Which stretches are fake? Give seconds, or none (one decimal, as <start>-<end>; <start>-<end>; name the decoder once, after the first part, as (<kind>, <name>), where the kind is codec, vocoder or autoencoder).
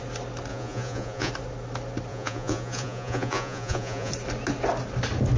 0.5-1.3 (vocoder, Vocos); 2.1-4.1